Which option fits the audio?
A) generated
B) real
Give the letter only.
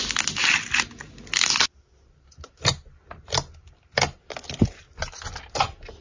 B